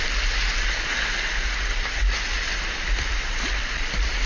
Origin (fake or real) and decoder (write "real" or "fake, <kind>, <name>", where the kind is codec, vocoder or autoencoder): real